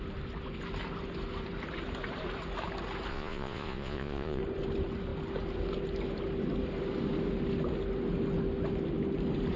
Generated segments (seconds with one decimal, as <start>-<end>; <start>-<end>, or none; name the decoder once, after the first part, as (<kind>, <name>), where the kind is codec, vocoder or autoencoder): 3.1-4.4 (vocoder, Vocos)